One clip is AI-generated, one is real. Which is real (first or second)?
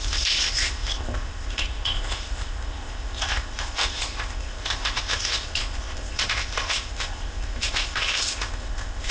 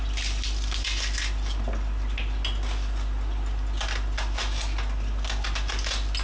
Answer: second